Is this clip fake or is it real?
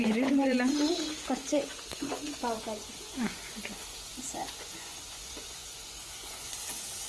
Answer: fake